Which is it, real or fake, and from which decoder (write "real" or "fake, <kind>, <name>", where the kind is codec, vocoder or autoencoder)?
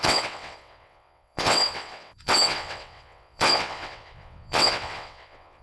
fake, vocoder, WaveNeXt